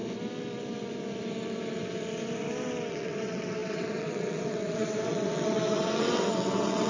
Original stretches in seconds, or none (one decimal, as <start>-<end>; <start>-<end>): 0.0-2.9